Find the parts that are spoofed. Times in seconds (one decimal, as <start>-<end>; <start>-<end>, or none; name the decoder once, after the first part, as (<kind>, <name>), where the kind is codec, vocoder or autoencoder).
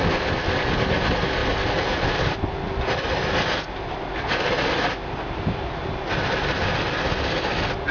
none